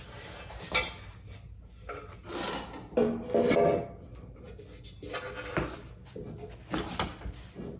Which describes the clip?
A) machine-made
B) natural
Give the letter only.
B